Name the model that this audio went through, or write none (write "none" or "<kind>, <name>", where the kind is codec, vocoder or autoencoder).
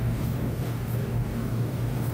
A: codec, DAC